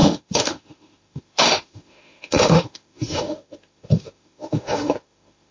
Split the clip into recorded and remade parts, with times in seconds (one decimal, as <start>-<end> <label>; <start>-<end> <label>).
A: 0.0-5.5 remade